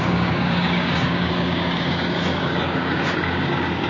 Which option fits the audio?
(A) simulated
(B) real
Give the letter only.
A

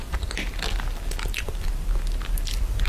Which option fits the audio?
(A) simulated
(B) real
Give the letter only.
B